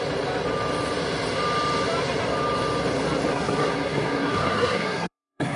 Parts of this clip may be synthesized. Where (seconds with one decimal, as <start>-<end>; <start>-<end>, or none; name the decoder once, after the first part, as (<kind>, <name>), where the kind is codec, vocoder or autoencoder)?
3.3-5.6 (codec, SNAC)